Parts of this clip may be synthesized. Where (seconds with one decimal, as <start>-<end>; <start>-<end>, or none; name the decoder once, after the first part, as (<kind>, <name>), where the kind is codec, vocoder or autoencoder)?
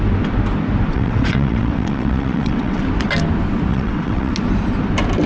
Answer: 0.9-2.8 (vocoder, WaveNeXt); 3.7-4.3